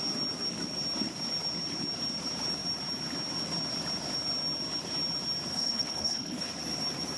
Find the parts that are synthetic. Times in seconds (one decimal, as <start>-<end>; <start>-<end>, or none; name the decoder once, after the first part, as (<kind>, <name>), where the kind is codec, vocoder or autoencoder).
5.5-6.5 (codec, HILCodec)